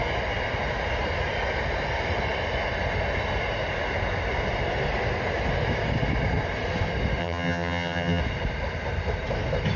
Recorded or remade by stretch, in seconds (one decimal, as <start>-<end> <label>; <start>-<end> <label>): 0.0-7.2 recorded; 7.2-8.2 remade; 8.2-9.8 recorded